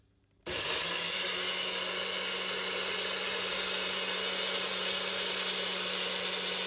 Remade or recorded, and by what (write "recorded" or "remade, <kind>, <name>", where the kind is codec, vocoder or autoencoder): recorded